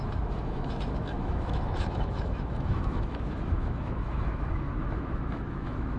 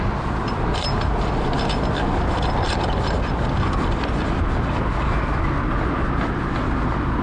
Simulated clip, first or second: first